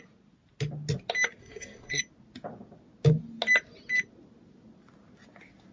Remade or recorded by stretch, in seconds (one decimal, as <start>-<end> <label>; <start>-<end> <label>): 0.0-1.4 recorded; 1.4-2.0 remade; 2.0-5.7 recorded